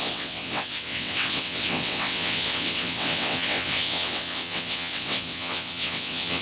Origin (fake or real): fake